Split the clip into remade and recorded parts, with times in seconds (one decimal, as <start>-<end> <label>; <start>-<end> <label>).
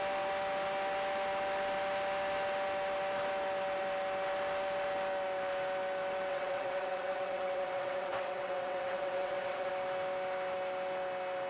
0.0-6.3 recorded; 6.3-9.7 remade; 9.7-11.5 recorded